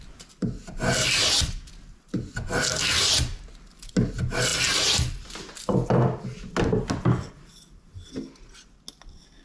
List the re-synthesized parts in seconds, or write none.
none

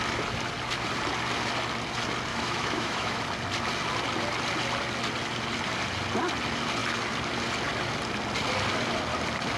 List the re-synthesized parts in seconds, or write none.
2.3-3.2 (autoencoder, DAC-VAE)

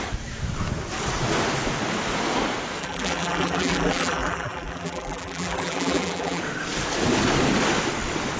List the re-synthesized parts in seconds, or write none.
2.8-6.4 (vocoder, BigVGAN v2)